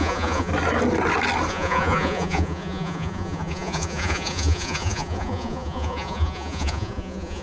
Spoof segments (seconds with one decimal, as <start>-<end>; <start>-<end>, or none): 0.0-0.5; 1.5-7.4